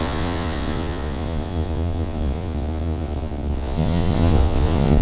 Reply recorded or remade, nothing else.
remade